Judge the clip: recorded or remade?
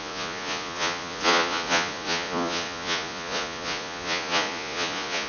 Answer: remade